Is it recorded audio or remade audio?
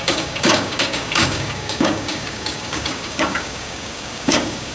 remade